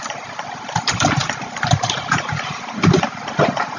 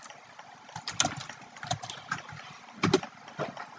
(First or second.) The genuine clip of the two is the second